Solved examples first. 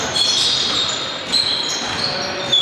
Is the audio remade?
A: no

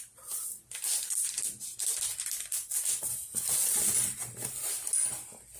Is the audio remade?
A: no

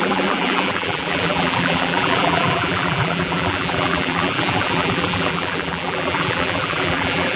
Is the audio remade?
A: yes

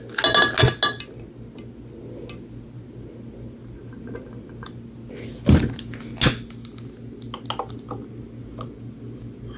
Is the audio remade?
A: no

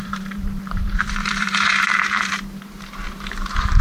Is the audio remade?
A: yes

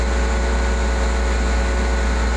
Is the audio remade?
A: no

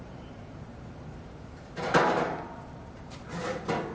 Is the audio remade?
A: yes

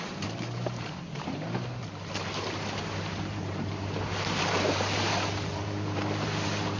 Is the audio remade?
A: yes